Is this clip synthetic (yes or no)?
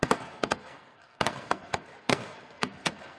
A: yes